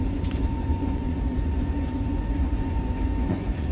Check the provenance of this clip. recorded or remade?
remade